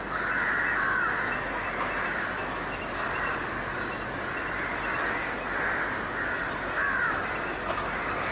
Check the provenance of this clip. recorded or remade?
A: recorded